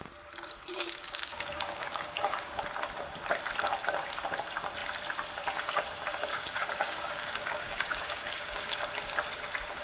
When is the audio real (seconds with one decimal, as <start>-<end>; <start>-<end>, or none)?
0.0-0.7; 2.6-6.3; 8.7-9.8